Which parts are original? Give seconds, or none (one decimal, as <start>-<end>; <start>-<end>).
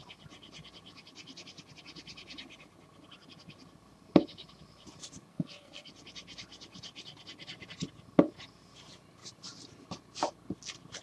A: 0.0-5.3; 5.9-11.0